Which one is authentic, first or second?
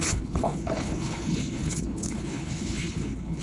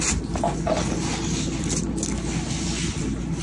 second